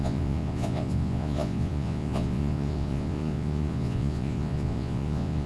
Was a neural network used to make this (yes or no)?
yes